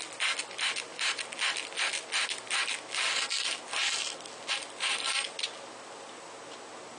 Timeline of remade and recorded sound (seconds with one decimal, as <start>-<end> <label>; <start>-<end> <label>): 0.0-7.0 recorded